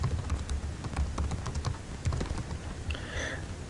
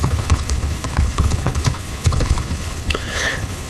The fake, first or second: second